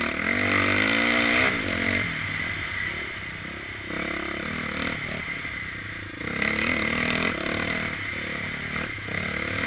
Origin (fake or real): real